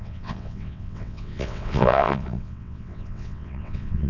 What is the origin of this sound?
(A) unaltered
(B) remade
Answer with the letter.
B